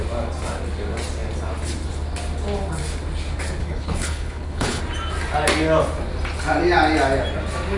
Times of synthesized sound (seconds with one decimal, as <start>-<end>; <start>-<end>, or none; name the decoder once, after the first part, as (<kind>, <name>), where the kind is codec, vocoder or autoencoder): 3.6-4.8 (codec, HILCodec)